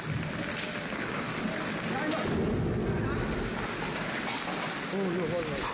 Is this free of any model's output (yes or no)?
yes